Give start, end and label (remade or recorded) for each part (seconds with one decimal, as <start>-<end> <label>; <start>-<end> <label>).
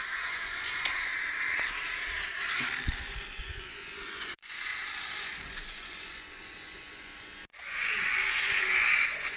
0.0-1.1 remade; 1.1-3.4 recorded; 3.4-4.7 remade; 4.7-5.2 recorded; 5.2-9.4 remade